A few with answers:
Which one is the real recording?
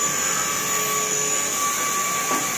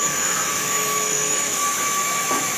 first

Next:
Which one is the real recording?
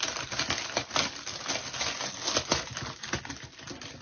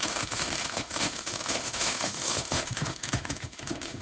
first